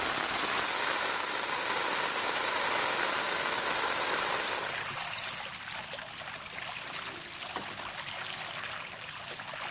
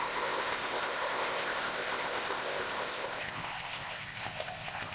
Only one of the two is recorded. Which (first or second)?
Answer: first